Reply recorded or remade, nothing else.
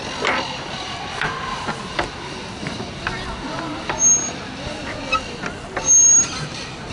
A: recorded